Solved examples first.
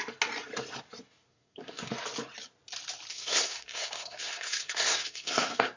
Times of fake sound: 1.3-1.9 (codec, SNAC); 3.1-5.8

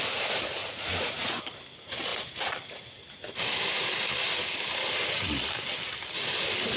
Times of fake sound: 0.6-1.4 (vocoder, Vocos)

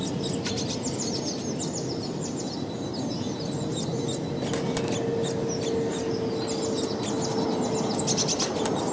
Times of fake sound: none